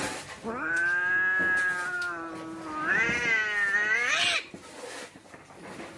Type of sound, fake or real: real